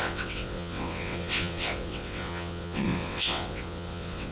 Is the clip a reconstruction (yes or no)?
yes